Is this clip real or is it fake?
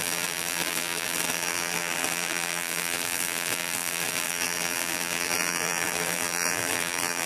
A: fake